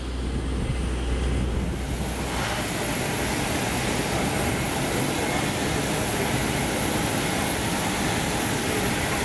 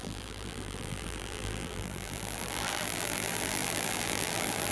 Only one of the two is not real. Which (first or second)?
second